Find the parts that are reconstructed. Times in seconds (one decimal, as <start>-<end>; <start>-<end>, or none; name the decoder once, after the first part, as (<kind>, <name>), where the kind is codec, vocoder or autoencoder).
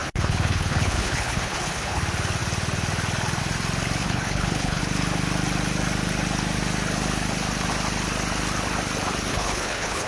0.0-2.0 (codec, HILCodec); 4.0-4.8; 9.3-10.1